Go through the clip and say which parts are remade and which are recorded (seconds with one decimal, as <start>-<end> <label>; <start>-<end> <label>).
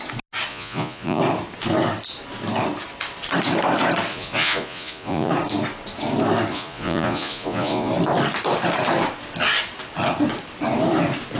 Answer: 0.0-0.5 recorded; 0.5-1.2 remade; 1.2-4.1 recorded; 4.1-5.3 remade; 5.3-6.5 recorded; 6.5-7.9 remade; 7.9-11.4 recorded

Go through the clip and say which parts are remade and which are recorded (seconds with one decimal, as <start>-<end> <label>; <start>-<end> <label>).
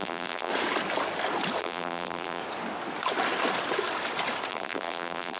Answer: 0.0-0.5 remade; 0.5-1.6 recorded; 1.6-2.4 remade; 2.4-4.5 recorded; 4.5-5.4 remade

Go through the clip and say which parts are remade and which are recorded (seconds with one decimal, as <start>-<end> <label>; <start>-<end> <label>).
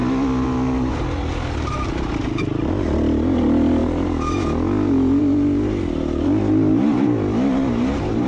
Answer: 0.0-8.3 recorded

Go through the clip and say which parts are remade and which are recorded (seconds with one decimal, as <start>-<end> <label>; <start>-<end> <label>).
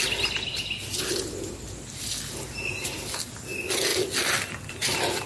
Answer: 0.0-5.3 recorded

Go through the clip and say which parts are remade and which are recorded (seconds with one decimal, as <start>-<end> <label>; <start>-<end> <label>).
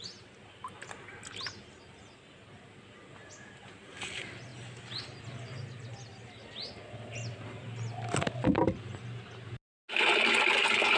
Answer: 0.0-11.0 recorded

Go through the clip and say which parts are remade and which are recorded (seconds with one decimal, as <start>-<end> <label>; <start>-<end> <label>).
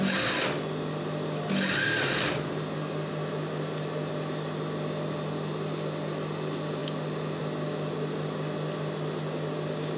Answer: 0.0-10.0 recorded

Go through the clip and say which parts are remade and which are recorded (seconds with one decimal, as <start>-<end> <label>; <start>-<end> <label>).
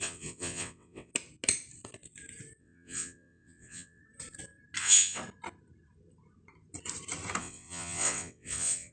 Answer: 0.0-1.1 remade; 1.1-2.6 recorded; 2.6-4.0 remade; 4.0-4.8 recorded; 4.8-5.2 remade; 5.2-7.4 recorded; 7.4-8.9 remade